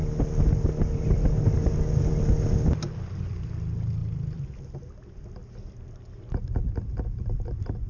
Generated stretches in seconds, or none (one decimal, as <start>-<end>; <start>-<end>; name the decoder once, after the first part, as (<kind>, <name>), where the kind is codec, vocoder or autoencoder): none